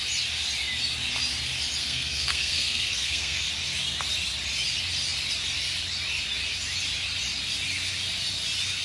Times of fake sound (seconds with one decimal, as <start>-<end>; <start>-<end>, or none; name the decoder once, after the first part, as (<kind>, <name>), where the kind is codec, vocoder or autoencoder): 1.8-3.5 (codec, SNAC)